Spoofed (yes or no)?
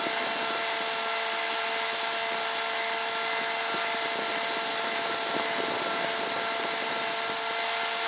no